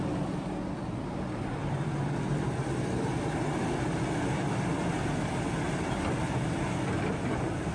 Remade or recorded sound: recorded